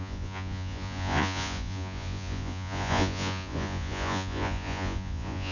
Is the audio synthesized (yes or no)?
yes